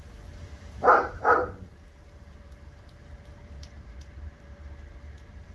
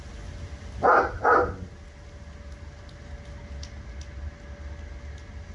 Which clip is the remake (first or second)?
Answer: first